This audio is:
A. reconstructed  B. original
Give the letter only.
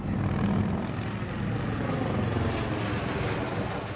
B